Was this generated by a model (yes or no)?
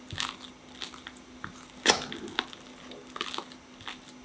no